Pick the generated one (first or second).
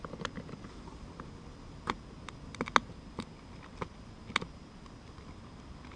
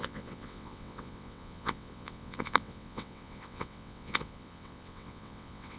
second